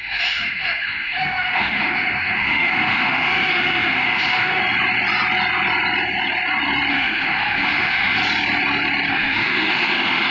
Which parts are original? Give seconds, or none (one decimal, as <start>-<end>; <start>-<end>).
4.6-6.9; 8.2-9.1